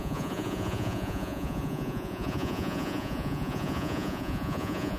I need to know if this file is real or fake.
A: fake